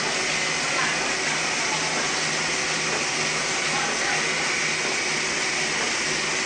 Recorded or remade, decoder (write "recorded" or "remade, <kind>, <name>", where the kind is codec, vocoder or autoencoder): recorded